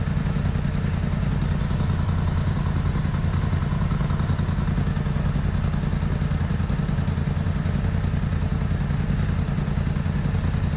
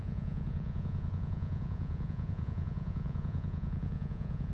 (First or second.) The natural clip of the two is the first